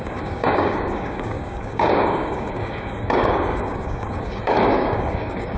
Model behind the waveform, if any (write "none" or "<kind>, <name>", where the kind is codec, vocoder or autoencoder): codec, DAC